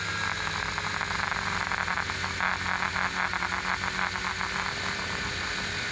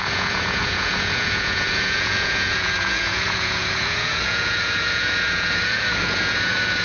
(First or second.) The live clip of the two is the first